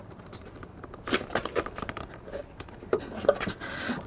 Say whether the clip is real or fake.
fake